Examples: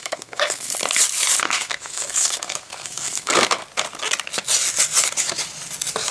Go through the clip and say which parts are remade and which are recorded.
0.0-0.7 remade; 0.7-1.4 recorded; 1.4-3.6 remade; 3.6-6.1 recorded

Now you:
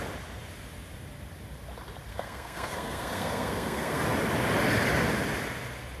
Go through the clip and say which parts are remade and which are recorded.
0.0-2.1 recorded; 2.1-4.0 remade; 4.0-6.0 recorded

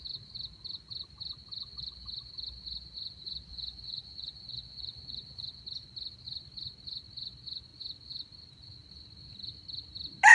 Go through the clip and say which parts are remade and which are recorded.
0.0-3.5 recorded; 3.5-5.5 remade; 5.5-10.3 recorded

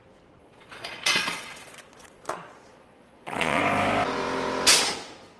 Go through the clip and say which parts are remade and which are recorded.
0.0-0.4 recorded; 0.4-3.6 remade; 3.6-5.4 recorded

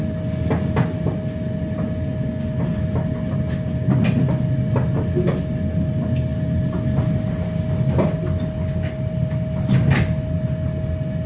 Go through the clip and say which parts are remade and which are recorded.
0.0-11.3 recorded

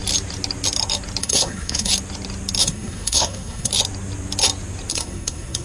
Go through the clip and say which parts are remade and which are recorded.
0.0-1.2 recorded; 1.2-1.9 remade; 1.9-2.6 recorded; 2.6-3.7 remade; 3.7-4.9 recorded; 4.9-5.6 remade

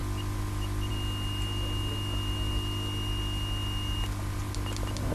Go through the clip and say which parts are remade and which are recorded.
0.0-5.1 recorded